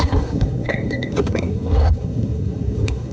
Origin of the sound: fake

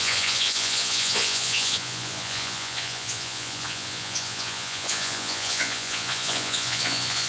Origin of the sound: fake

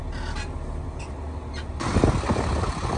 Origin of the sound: real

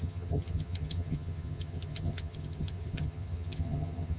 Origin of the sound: fake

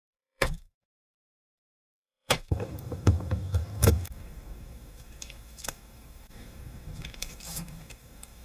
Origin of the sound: fake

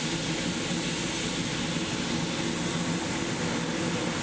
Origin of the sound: real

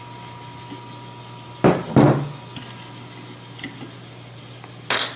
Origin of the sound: real